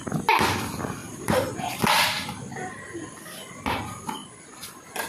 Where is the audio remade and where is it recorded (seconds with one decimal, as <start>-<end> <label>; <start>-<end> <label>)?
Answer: 0.0-1.0 recorded; 1.0-1.8 remade; 1.8-5.1 recorded